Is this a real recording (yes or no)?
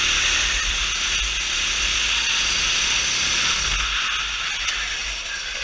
yes